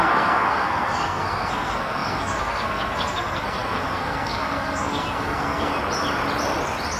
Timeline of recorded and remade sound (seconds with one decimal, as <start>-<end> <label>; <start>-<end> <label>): 0.0-5.7 remade; 5.7-7.0 recorded